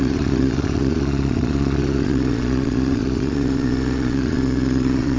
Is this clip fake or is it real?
fake